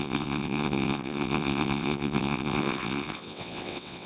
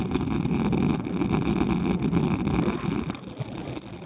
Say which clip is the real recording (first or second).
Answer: second